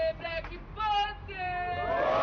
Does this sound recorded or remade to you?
remade